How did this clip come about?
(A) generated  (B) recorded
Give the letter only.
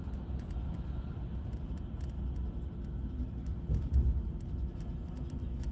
B